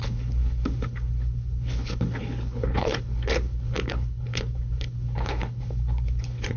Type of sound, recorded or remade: remade